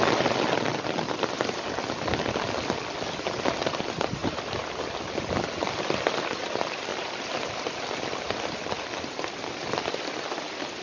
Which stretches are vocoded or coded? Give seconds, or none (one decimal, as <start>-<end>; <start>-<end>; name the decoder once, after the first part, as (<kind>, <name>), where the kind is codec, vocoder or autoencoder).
4.2-4.8 (vocoder, BigVGAN v2)